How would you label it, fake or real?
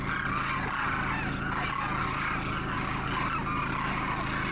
real